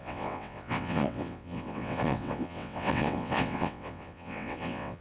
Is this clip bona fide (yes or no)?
no